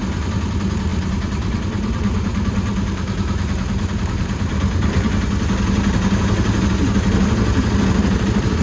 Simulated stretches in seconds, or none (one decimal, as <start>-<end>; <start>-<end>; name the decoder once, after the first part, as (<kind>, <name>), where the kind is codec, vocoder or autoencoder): 0.9-5.1 (vocoder, BigVGAN v2)